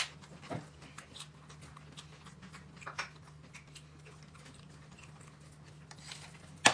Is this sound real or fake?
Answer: real